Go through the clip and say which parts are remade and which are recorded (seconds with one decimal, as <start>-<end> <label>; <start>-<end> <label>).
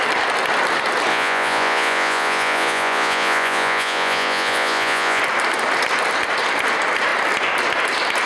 0.0-1.1 recorded; 1.1-5.2 remade; 5.2-8.3 recorded